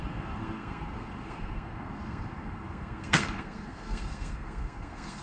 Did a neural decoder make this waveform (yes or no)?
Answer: yes